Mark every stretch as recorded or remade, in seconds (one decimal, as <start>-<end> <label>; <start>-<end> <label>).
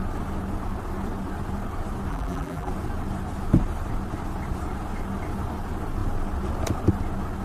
0.0-2.1 recorded; 2.1-2.7 remade; 2.7-7.4 recorded